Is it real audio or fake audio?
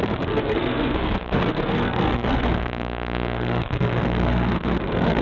fake